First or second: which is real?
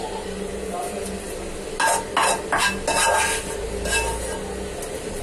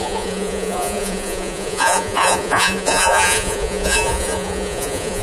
first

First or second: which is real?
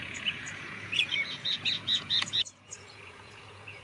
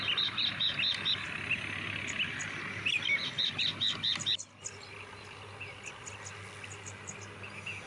second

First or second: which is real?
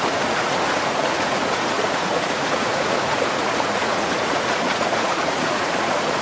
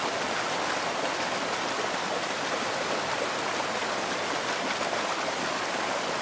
second